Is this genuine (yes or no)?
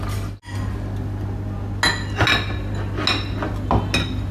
yes